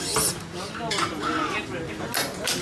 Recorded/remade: recorded